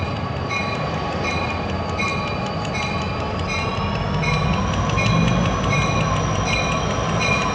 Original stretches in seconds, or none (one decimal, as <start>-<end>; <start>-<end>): 0.0-7.5